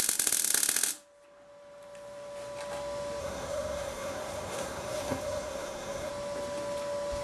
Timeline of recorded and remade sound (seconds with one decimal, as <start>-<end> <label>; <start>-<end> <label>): 0.0-3.2 recorded; 3.2-6.1 remade; 6.1-7.2 recorded